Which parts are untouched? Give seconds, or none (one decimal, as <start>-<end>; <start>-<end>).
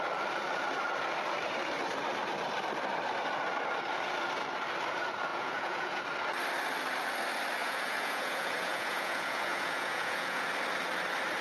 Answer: 0.0-5.3; 6.0-7.6; 10.5-11.4